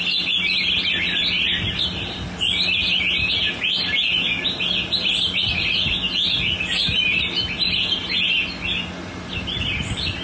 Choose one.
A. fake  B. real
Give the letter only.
B